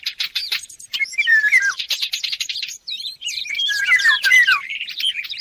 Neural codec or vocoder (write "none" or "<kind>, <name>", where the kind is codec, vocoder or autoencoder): vocoder, BigVGAN v2